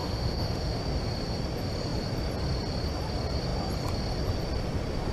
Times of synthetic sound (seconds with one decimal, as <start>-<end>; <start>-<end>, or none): 0.0-0.8